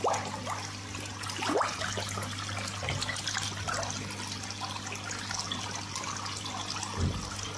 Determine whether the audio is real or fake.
real